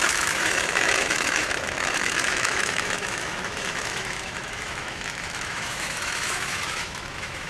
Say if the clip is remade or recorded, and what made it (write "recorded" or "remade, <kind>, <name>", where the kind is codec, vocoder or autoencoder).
remade, autoencoder, DAC-VAE